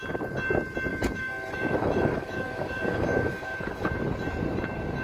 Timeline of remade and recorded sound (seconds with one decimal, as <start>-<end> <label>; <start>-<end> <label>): 0.0-0.9 recorded; 0.9-3.9 remade; 3.9-5.0 recorded